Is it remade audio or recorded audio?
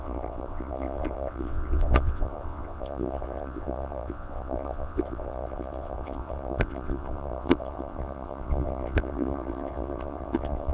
remade